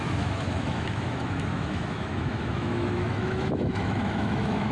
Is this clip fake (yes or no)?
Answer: yes